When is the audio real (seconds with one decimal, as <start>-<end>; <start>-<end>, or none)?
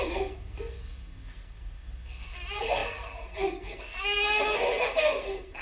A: none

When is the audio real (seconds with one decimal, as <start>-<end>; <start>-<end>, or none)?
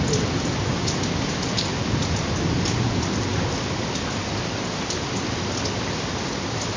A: 0.0-6.8